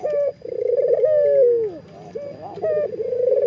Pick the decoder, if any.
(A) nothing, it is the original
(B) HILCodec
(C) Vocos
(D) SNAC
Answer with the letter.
A